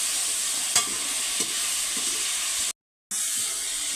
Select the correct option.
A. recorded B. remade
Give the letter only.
A